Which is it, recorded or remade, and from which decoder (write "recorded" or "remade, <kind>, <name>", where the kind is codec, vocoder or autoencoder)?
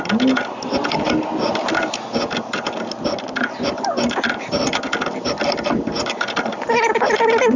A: recorded